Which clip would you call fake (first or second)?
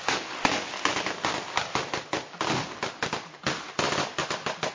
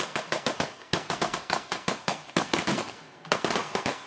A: second